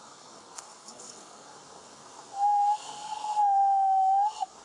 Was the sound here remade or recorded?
remade